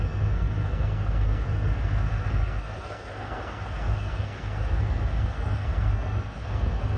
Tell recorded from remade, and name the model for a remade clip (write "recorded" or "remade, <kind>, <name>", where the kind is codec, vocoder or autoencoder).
remade, codec, SNAC